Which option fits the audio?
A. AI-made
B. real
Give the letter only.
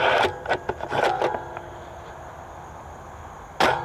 B